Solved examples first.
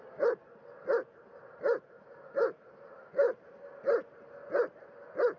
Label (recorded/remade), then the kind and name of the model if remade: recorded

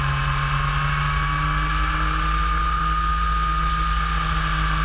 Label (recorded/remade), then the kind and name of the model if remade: recorded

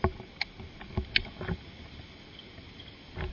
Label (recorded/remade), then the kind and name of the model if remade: recorded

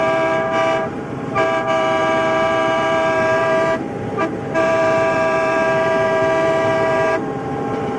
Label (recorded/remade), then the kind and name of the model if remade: remade, vocoder, BigVGAN v2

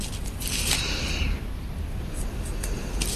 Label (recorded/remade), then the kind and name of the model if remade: recorded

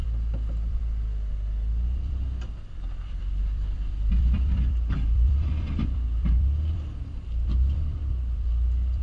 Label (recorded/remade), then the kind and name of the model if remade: remade, vocoder, BigVGAN v2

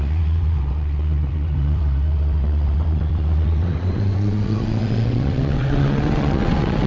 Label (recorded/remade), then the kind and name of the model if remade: remade, vocoder, WaveNeXt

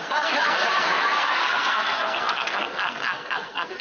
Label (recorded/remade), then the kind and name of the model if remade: remade, codec, SNAC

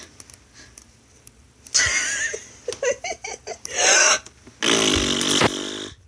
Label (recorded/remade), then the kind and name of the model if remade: recorded